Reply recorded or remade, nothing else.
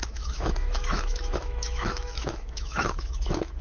remade